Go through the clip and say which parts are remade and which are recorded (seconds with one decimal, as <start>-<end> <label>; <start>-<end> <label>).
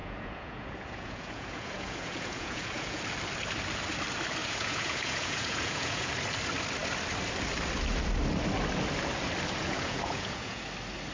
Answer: 0.0-3.0 remade; 3.0-4.4 recorded; 4.4-6.1 remade; 6.1-9.6 recorded; 9.6-10.6 remade; 10.6-11.1 recorded